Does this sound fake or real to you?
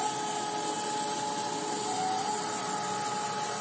real